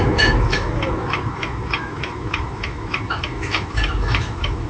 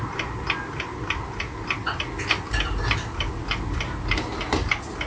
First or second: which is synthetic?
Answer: first